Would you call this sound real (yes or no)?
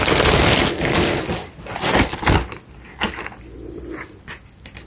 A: yes